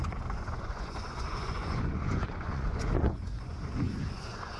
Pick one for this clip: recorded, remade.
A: remade